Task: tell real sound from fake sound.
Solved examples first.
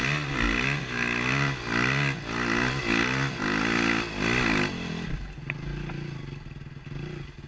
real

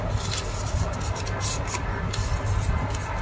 real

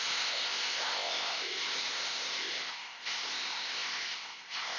fake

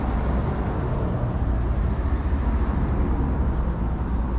real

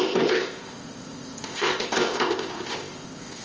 fake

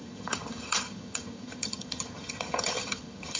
fake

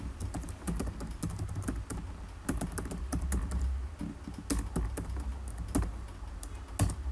real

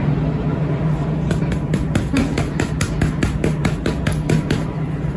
real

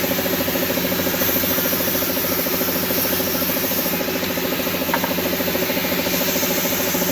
real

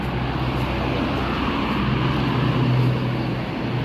real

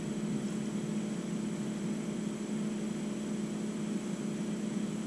real